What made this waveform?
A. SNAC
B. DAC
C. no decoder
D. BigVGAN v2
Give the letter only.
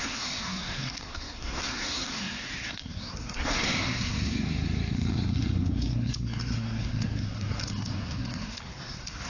A